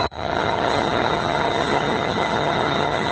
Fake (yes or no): yes